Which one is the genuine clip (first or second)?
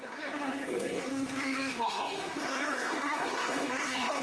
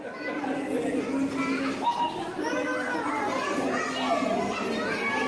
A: second